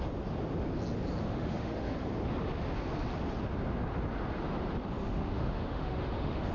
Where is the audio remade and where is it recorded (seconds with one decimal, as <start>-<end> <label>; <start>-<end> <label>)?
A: 0.0-1.2 recorded; 1.2-1.9 remade; 1.9-5.0 recorded; 5.0-6.5 remade